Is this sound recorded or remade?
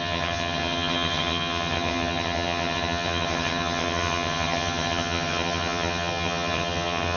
remade